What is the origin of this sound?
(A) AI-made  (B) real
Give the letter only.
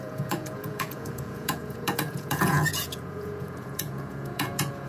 A